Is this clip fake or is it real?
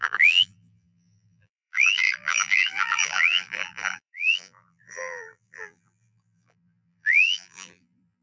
fake